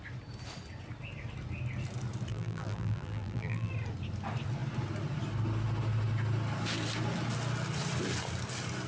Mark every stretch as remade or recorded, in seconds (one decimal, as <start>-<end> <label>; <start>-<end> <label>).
0.0-2.3 recorded; 2.3-3.7 remade; 3.7-8.9 recorded